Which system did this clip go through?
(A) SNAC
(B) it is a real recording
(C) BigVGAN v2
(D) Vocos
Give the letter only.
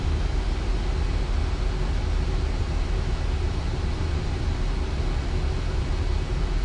B